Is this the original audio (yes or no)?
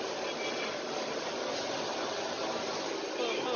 yes